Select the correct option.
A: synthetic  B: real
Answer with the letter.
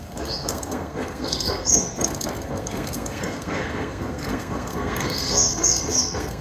A